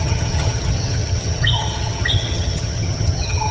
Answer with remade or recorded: remade